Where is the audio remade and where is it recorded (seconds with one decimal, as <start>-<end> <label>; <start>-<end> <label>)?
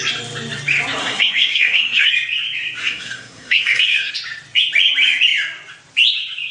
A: 0.0-1.0 recorded; 1.0-2.1 remade; 2.1-2.8 recorded; 2.8-4.1 remade; 4.1-6.5 recorded